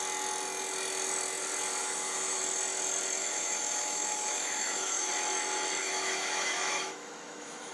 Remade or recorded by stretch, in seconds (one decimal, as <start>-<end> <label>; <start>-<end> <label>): 0.0-1.8 recorded; 1.8-2.4 remade; 2.4-3.2 recorded; 3.2-5.1 remade; 5.1-5.8 recorded; 5.8-7.7 remade